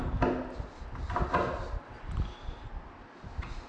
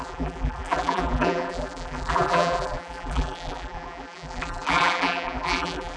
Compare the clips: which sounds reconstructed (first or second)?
second